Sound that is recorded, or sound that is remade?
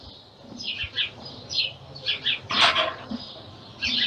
recorded